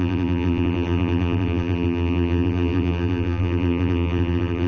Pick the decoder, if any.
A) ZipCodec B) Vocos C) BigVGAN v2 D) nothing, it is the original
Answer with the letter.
C